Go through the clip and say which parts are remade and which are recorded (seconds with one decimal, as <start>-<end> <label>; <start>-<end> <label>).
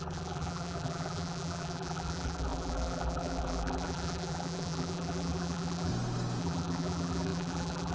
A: 0.0-5.9 remade; 5.9-6.4 recorded; 6.4-7.9 remade